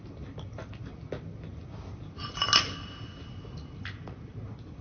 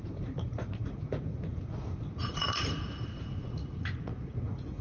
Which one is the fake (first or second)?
second